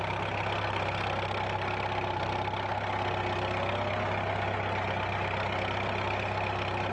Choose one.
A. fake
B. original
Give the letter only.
B